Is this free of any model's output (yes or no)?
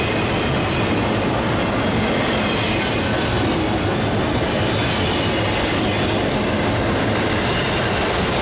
yes